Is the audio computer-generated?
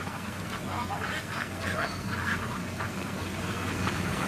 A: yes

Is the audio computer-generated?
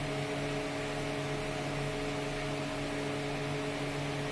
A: no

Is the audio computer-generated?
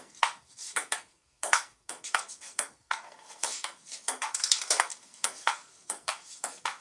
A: yes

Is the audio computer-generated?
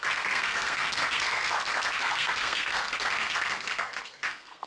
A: yes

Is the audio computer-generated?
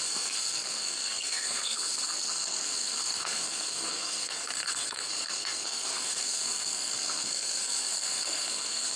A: yes